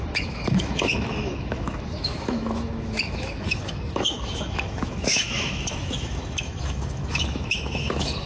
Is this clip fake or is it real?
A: fake